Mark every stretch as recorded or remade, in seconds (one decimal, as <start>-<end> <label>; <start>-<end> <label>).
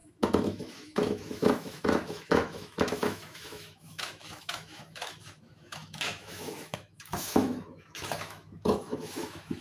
0.0-9.6 remade